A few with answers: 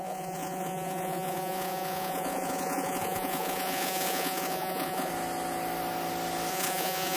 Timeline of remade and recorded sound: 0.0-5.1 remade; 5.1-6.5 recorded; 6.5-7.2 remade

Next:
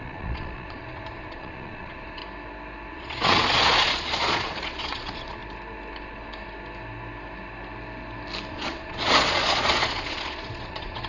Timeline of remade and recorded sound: 0.0-2.2 remade; 2.2-2.9 recorded; 2.9-5.4 remade; 5.4-8.5 recorded; 8.5-11.1 remade